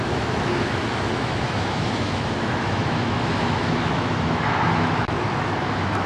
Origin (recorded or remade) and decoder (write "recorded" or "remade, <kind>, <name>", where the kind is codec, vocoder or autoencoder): remade, autoencoder, DAC-VAE